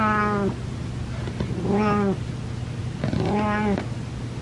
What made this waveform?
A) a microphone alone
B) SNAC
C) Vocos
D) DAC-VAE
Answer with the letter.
A